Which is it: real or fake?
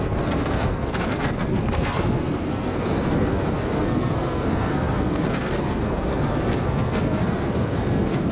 fake